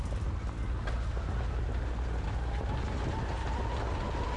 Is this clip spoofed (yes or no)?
no